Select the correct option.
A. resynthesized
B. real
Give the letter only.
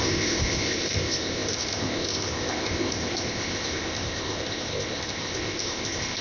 A